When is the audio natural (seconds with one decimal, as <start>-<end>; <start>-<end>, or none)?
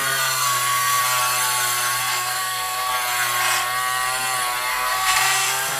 1.0-2.0; 2.9-4.7